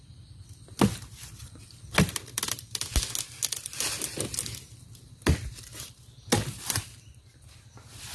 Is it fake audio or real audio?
real